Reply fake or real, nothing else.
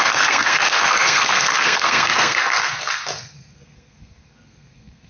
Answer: fake